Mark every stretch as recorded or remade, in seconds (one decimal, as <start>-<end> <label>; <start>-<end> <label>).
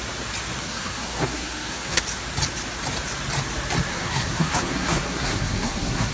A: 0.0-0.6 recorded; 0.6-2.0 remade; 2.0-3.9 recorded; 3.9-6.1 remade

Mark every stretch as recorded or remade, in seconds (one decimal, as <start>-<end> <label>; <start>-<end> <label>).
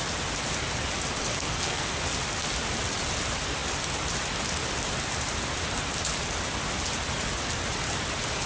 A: 0.0-1.2 recorded; 1.2-2.0 remade; 2.0-8.5 recorded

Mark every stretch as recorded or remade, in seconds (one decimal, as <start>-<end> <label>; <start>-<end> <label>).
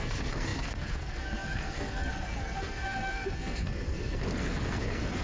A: 0.0-5.2 remade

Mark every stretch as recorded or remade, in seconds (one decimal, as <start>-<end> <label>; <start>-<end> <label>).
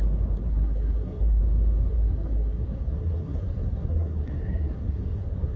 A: 0.0-0.5 recorded; 0.5-1.4 remade; 1.4-1.9 recorded; 1.9-5.6 remade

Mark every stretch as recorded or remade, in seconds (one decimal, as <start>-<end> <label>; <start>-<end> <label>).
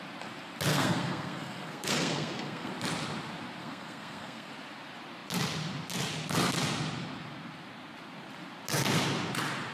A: 0.0-0.7 recorded; 0.7-2.7 remade; 2.7-3.6 recorded; 3.6-4.5 remade; 4.5-9.7 recorded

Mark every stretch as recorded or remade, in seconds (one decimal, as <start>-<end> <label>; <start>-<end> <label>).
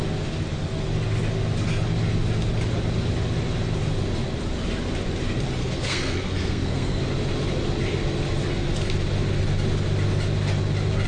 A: 0.0-5.6 recorded; 5.6-7.0 remade; 7.0-11.1 recorded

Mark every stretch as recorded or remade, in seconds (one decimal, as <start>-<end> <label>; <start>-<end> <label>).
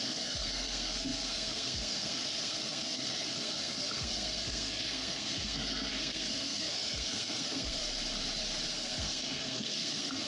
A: 0.0-7.8 remade; 7.8-8.7 recorded; 8.7-10.3 remade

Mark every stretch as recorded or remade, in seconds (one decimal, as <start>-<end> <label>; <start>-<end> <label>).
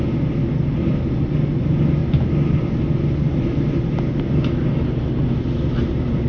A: 0.0-6.3 recorded